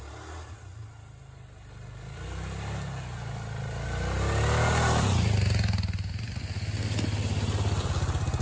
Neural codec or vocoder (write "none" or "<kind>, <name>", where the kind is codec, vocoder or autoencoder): none